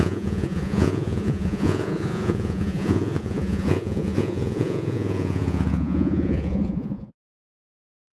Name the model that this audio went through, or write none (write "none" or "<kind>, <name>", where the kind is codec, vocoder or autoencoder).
vocoder, Vocos